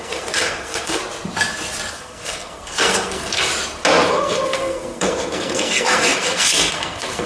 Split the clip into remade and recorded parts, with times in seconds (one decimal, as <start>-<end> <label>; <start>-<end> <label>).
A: 0.0-1.0 remade; 1.0-1.9 recorded; 1.9-3.5 remade; 3.5-4.1 recorded; 4.1-7.3 remade